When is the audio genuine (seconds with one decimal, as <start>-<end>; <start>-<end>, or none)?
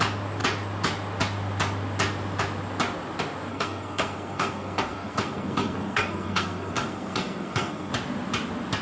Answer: 0.0-3.5; 7.9-8.8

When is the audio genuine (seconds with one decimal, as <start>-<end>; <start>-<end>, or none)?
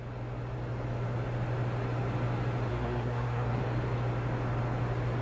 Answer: 0.0-2.7; 3.6-5.2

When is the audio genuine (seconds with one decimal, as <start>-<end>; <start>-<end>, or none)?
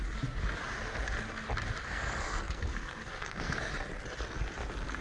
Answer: 0.0-1.8; 3.7-5.0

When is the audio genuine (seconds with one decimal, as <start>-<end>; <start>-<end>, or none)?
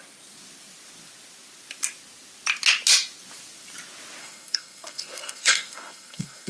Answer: 0.0-4.2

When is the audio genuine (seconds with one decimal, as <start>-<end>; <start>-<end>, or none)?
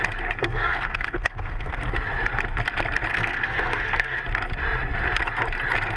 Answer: 0.0-0.4; 1.8-3.1; 4.2-6.0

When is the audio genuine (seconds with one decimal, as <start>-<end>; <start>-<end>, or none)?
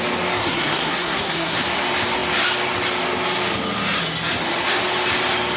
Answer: 0.0-0.4; 1.6-5.6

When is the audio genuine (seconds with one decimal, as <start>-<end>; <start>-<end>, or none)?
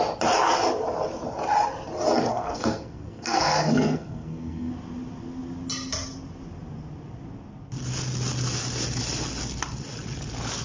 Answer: 0.0-2.3; 4.7-10.6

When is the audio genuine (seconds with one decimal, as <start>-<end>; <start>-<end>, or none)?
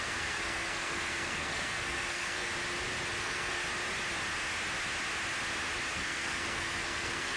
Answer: 2.5-3.2; 3.6-5.9